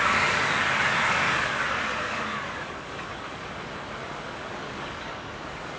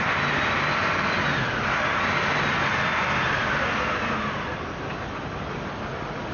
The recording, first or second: second